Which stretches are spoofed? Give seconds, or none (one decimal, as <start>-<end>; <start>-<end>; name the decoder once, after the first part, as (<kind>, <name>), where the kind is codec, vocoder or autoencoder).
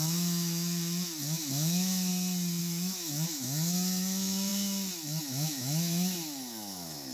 0.0-2.1 (autoencoder, DAC-VAE); 2.6-7.1